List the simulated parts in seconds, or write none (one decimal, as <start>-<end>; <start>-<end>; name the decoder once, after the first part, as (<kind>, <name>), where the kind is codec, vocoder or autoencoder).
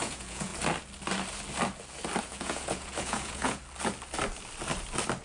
0.0-0.5 (vocoder, Vocos); 2.2-3.6